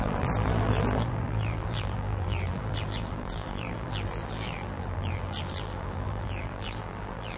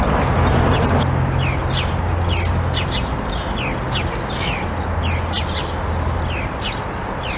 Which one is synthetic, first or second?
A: first